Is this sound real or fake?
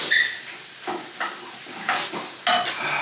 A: real